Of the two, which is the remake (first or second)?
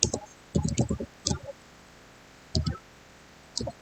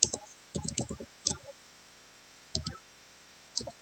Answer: second